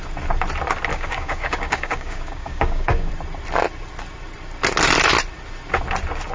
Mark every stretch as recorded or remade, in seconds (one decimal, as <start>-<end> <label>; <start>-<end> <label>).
0.0-0.9 recorded; 0.9-3.1 remade; 3.1-6.3 recorded